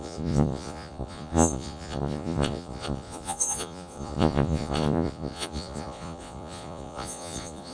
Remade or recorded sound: remade